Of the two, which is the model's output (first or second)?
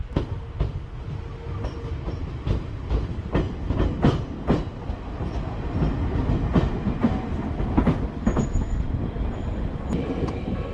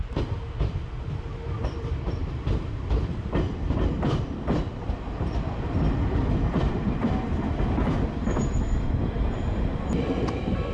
second